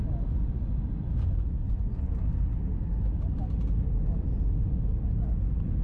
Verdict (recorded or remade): recorded